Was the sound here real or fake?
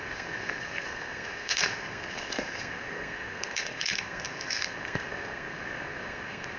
fake